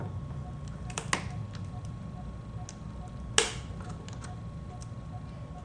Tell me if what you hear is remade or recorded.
recorded